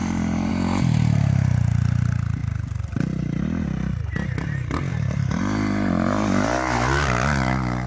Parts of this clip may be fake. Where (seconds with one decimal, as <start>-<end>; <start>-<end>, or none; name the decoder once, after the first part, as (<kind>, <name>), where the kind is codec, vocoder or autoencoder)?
0.0-0.5 (vocoder, BigVGAN v2); 4.9-5.4